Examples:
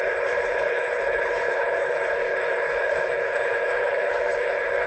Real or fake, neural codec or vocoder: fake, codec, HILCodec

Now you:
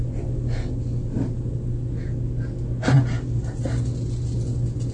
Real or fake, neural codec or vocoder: real